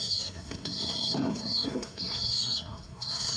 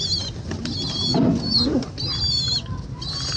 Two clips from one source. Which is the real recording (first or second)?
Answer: second